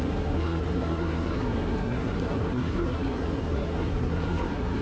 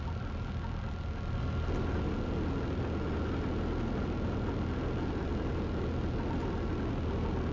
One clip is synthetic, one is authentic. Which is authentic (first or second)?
second